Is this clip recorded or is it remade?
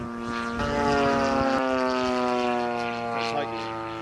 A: recorded